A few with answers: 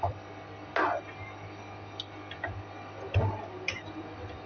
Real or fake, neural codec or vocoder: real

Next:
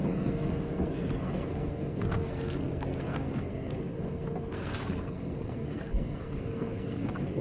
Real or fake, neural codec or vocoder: fake, codec, SNAC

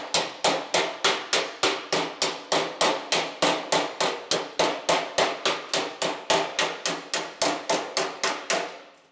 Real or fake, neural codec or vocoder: real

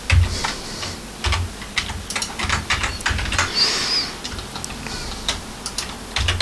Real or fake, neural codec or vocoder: real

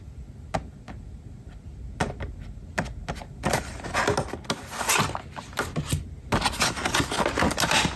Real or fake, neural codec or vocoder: real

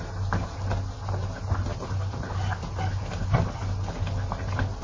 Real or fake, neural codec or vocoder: real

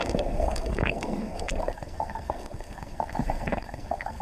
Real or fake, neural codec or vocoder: fake, codec, SNAC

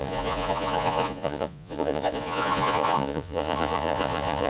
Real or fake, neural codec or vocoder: fake, vocoder, Vocos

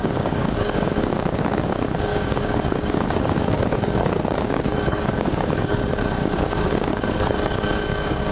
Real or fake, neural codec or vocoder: fake, codec, DAC